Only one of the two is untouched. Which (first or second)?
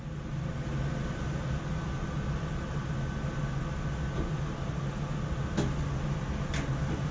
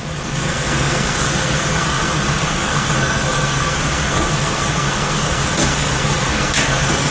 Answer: first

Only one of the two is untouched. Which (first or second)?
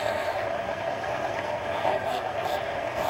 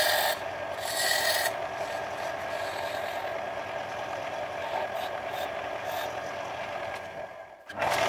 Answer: second